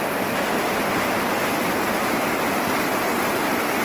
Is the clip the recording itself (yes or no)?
yes